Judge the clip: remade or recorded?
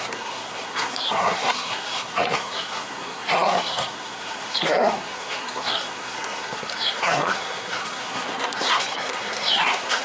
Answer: remade